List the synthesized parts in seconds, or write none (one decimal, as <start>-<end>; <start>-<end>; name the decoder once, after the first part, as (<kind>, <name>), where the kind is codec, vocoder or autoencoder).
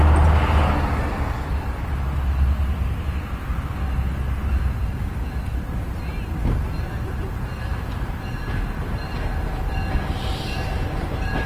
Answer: none